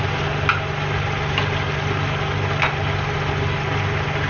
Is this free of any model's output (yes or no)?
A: yes